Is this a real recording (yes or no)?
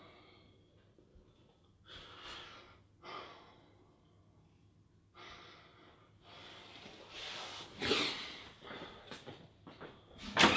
yes